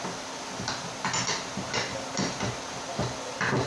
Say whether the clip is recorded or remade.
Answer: remade